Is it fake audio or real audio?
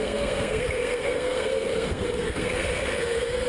fake